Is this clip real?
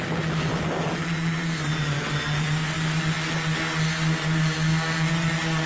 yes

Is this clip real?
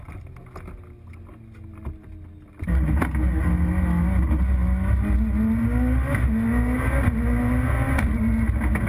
yes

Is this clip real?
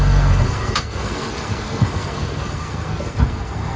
no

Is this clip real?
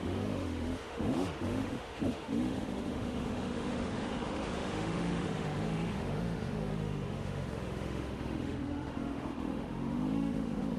no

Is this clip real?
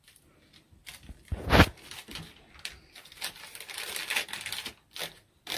yes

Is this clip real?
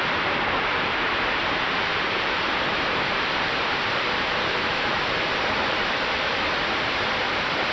no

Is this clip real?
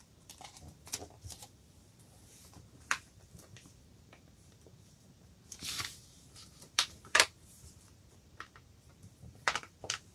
no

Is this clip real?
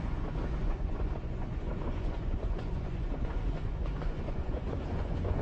no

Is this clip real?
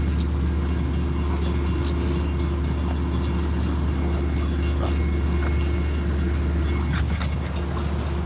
yes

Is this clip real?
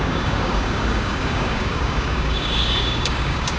no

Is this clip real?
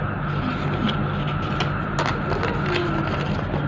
yes